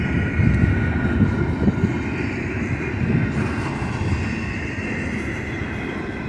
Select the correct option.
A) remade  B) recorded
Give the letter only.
B